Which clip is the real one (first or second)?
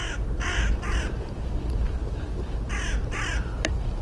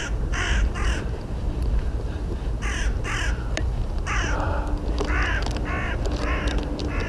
first